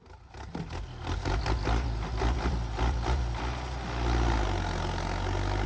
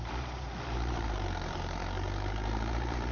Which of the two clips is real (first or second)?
first